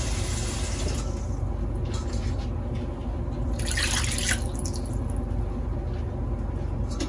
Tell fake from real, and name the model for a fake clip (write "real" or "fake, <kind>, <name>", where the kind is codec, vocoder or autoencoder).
real